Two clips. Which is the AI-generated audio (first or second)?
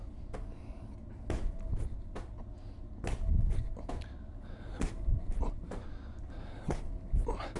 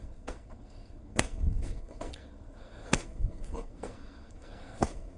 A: second